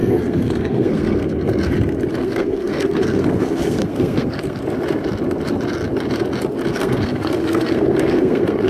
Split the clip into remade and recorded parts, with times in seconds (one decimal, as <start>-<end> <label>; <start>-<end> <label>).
0.0-1.7 remade; 1.7-2.2 recorded; 2.2-4.6 remade; 4.6-6.7 recorded; 6.7-8.7 remade